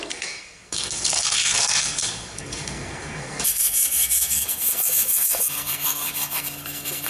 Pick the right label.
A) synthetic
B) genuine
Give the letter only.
A